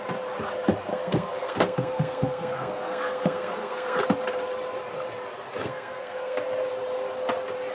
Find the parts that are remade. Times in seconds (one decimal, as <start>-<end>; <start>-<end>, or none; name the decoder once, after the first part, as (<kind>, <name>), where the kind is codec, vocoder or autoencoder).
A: 0.9-4.0 (codec, SNAC); 5.6-6.4